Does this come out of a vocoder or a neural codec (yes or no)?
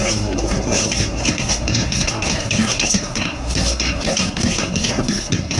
yes